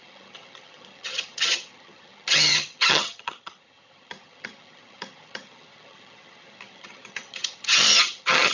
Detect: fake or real fake